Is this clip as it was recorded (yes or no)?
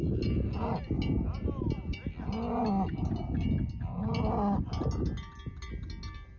yes